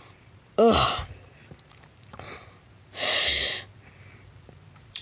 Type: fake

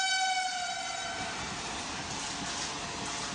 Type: real